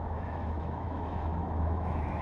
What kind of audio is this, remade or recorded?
remade